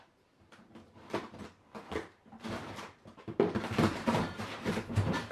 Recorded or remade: remade